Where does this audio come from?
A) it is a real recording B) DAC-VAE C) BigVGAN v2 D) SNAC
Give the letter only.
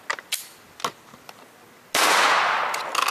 A